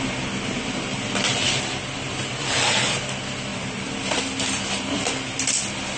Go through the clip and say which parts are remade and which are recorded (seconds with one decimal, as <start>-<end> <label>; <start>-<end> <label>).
0.0-1.3 recorded; 1.3-3.0 remade; 3.0-3.5 recorded; 3.5-4.2 remade; 4.2-6.0 recorded